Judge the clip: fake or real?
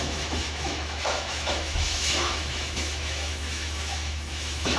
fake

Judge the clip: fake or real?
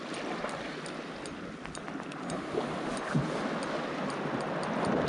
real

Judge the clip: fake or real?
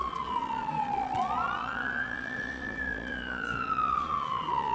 fake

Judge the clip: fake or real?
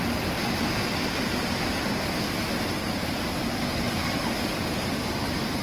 fake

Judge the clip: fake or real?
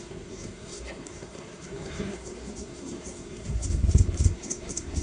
fake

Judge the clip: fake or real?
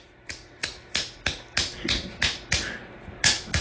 real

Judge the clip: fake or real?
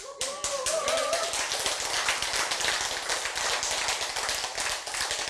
real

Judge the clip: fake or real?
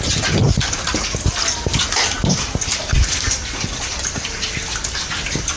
real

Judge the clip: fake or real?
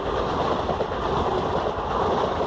real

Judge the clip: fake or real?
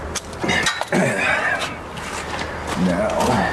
real